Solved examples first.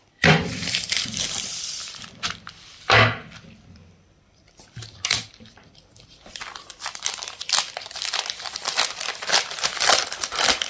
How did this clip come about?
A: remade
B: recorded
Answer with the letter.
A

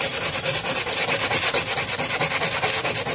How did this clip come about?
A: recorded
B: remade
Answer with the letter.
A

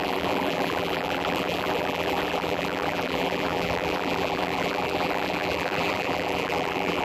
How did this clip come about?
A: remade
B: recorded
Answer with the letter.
A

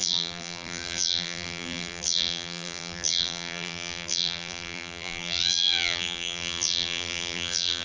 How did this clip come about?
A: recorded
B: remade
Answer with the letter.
B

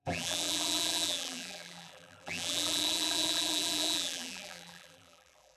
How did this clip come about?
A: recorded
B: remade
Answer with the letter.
B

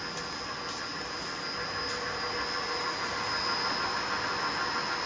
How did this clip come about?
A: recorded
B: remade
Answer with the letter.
A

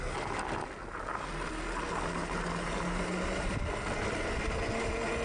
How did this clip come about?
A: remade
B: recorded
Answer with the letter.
B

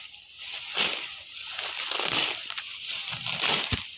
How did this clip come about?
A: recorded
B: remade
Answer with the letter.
B